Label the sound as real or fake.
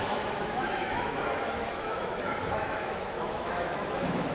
fake